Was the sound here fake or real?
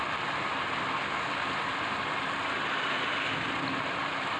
real